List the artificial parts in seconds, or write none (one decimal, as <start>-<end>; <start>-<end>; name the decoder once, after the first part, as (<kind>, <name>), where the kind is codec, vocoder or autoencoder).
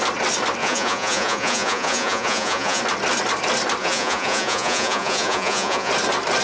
0.6-2.8 (vocoder, Vocos); 3.8-5.9